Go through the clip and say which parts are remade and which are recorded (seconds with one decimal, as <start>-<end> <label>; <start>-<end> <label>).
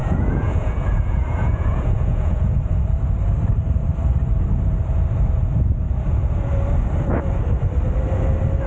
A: 0.0-2.8 remade; 2.8-8.7 recorded